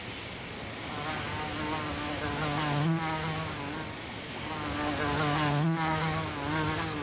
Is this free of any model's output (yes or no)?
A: yes